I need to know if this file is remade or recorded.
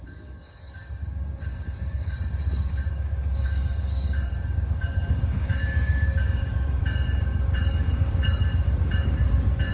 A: remade